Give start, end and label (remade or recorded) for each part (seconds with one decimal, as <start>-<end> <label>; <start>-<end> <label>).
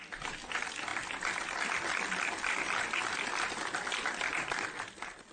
0.0-5.3 recorded